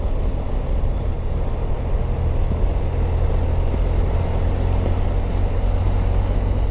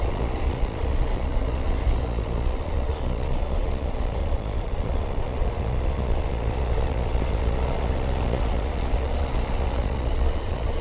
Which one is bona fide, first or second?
first